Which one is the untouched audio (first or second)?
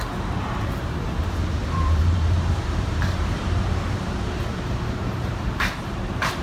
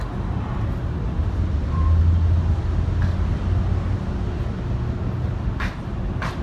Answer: second